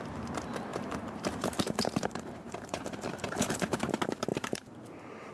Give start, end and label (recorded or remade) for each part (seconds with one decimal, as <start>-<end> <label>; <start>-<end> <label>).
0.0-0.7 recorded; 0.7-3.9 remade; 3.9-4.3 recorded; 4.3-5.3 remade